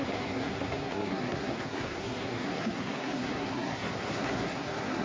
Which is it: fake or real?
fake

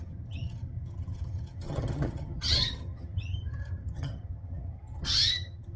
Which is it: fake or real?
fake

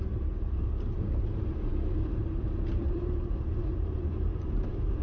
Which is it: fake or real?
fake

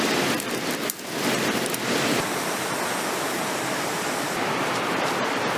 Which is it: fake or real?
real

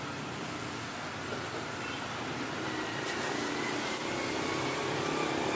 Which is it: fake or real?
real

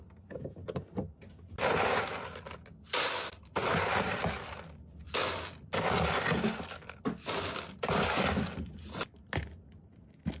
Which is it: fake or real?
real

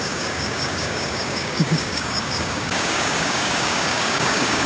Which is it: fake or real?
fake